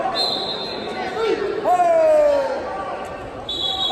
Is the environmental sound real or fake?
real